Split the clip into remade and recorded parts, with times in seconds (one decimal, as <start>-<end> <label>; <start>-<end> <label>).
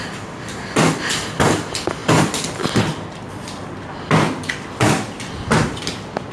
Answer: 0.0-6.3 recorded